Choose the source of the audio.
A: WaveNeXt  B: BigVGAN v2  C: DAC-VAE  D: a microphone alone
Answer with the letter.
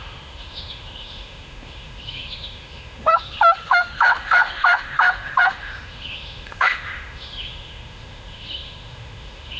C